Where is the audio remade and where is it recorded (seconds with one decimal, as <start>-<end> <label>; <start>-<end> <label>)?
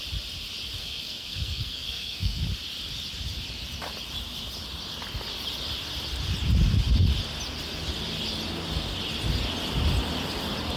0.0-0.8 recorded; 0.8-2.4 remade; 2.4-10.8 recorded